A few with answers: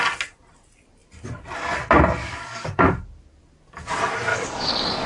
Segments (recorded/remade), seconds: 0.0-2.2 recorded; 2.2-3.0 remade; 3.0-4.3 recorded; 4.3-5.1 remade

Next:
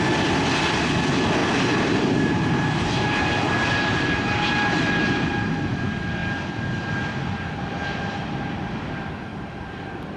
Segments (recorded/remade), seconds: 0.0-1.4 recorded; 1.4-5.5 remade; 5.5-9.3 recorded; 9.3-10.2 remade

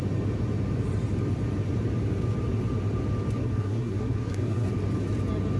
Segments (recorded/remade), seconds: 0.0-3.4 recorded; 3.4-4.7 remade; 4.7-5.6 recorded

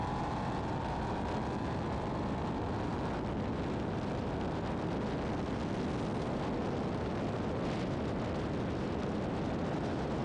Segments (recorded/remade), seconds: 0.0-10.2 recorded

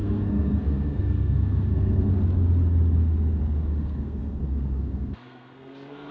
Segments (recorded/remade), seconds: 0.0-2.1 remade; 2.1-3.4 recorded; 3.4-6.1 remade

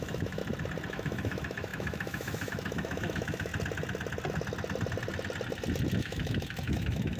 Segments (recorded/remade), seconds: 0.0-0.4 remade; 0.4-0.9 recorded; 0.9-3.5 remade; 3.5-6.0 recorded; 6.0-7.2 remade

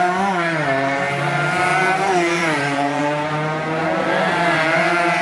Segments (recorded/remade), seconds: 0.0-2.4 recorded; 2.4-3.0 remade; 3.0-5.2 recorded